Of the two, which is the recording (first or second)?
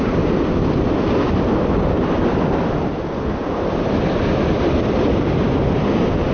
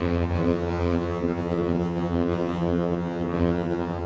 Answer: first